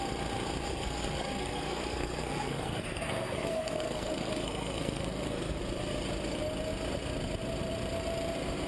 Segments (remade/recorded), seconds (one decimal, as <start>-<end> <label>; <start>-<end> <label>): 0.0-0.7 recorded; 0.7-5.6 remade; 5.6-8.7 recorded